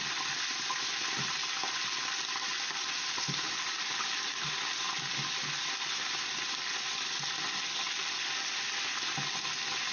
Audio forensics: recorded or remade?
recorded